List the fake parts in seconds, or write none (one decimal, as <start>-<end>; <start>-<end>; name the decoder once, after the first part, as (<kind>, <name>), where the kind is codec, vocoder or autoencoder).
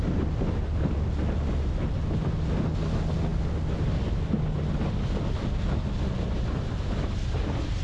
none